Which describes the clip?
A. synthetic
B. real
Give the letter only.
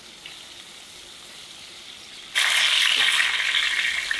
B